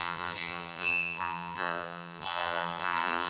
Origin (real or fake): fake